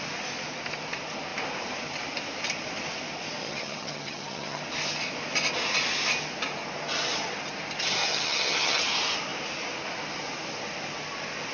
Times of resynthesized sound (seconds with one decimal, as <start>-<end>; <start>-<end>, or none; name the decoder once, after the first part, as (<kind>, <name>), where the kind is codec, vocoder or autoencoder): 3.4-4.6 (vocoder, HiFi-GAN); 8.0-8.8